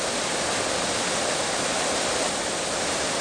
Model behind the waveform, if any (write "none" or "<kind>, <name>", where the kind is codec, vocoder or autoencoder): vocoder, BigVGAN v2